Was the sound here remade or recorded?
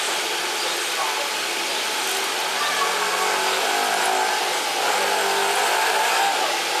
recorded